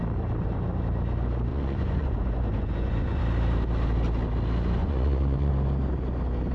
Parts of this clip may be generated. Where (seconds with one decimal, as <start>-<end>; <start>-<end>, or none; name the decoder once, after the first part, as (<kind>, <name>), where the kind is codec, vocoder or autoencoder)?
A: 1.5-3.2 (vocoder, Vocos); 4.8-5.5